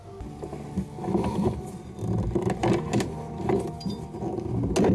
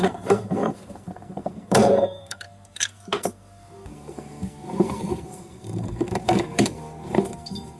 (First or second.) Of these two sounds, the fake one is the second